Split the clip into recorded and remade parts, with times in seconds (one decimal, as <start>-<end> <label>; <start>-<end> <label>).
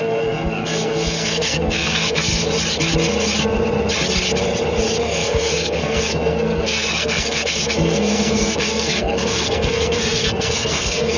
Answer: 0.0-2.3 remade; 2.3-5.0 recorded; 5.0-11.2 remade